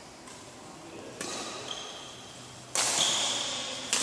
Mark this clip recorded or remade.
recorded